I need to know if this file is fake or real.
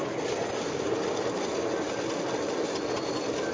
real